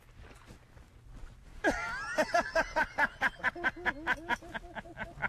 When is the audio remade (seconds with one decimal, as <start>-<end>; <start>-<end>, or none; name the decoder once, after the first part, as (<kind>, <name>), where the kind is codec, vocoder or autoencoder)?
1.8-3.5 (vocoder, BigVGAN v2)